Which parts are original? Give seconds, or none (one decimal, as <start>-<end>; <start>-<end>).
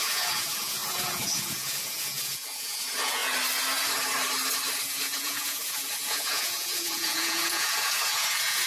3.2-4.9